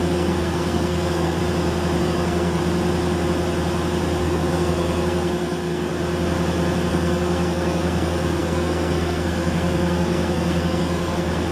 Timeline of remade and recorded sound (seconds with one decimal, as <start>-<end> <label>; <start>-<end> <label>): 0.0-1.4 remade; 1.4-2.0 recorded; 2.0-2.6 remade; 2.6-4.2 recorded; 4.2-5.9 remade; 5.9-6.9 recorded; 6.9-11.5 remade